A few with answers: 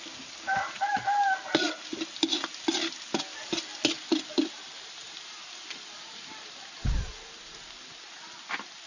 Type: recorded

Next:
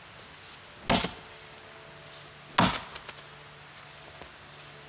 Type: recorded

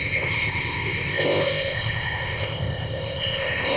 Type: remade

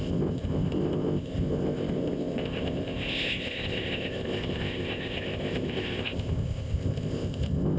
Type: remade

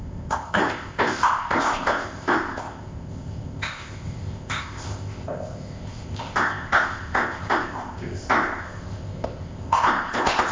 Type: remade